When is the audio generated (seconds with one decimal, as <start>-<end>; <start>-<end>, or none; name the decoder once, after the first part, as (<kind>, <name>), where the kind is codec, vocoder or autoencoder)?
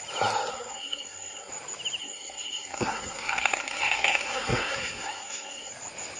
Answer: 0.5-1.5 (codec, SNAC); 2.0-5.7